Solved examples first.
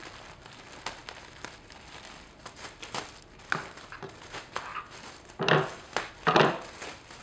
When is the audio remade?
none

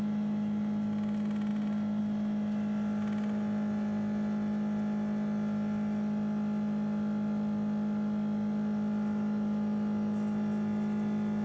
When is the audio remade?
none

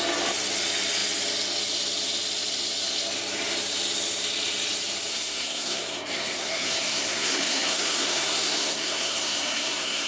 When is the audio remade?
5.1-10.1

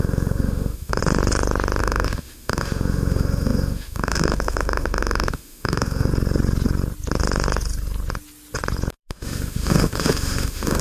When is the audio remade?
0.0-1.0; 1.8-6.1; 8.9-10.8